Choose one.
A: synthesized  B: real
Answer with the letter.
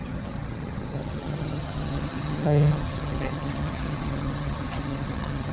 A